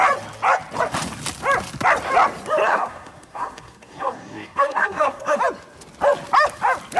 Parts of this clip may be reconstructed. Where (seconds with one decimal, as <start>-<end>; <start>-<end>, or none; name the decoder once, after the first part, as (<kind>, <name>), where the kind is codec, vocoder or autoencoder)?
2.6-5.4 (codec, SNAC)

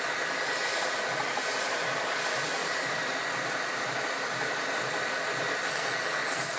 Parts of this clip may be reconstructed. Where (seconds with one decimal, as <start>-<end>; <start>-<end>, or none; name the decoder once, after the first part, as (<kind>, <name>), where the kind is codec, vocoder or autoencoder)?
5.7-6.6 (codec, SNAC)

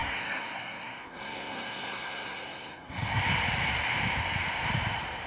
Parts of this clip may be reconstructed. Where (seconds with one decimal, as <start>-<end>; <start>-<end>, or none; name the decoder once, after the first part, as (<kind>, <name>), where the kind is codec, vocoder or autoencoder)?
0.0-3.2 (codec, SNAC)

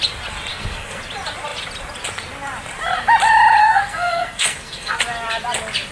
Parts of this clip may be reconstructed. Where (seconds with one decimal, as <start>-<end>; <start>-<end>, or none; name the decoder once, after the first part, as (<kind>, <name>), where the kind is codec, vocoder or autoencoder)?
0.5-1.0 (codec, SNAC); 3.6-5.0